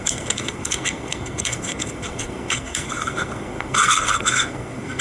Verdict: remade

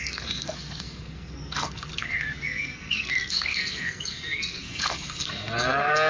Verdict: remade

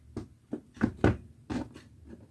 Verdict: recorded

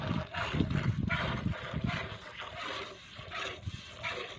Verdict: recorded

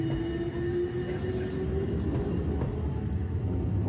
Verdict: recorded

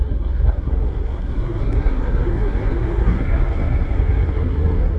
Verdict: remade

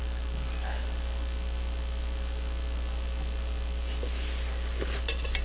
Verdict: recorded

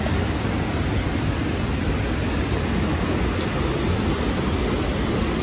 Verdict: recorded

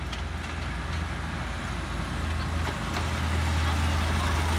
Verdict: recorded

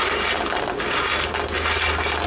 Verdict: recorded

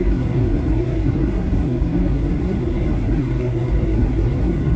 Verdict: remade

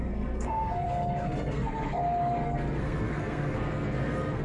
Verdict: remade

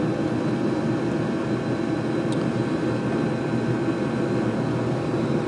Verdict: recorded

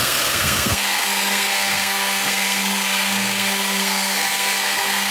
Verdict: remade